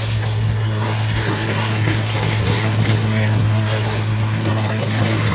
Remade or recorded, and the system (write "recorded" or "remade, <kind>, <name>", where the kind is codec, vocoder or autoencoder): remade, codec, SNAC